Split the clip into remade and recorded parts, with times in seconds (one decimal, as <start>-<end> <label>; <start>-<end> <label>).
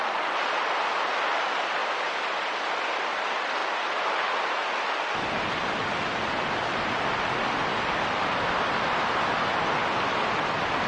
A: 0.0-10.9 recorded